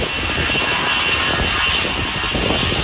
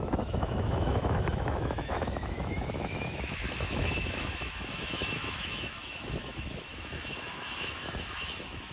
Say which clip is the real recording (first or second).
first